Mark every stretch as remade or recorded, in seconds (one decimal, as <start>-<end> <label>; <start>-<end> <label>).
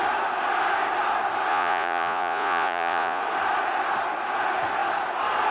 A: 0.0-1.5 recorded; 1.5-3.2 remade; 3.2-5.5 recorded